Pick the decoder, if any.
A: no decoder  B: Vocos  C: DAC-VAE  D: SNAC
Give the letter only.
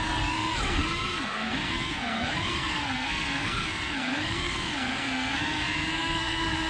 D